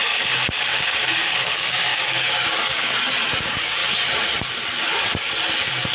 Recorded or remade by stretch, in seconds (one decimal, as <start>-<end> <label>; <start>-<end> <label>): 0.0-2.9 remade; 2.9-3.4 recorded; 3.4-3.8 remade; 3.8-5.9 recorded